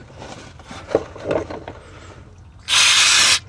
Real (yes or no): yes